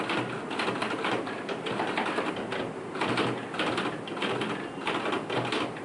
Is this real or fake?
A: fake